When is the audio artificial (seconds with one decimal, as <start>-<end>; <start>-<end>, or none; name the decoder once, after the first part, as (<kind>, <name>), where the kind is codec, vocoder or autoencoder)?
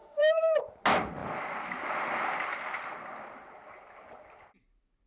0.0-0.6 (autoencoder, DAC-VAE)